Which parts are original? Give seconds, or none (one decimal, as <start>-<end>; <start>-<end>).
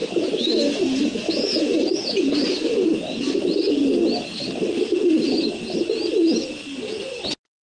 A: 2.0-7.6